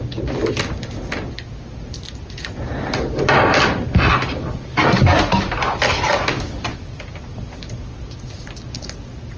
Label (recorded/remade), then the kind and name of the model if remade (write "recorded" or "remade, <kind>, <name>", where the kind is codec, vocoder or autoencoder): recorded